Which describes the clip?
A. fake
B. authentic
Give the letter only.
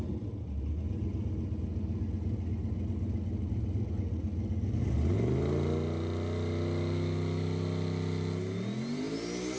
B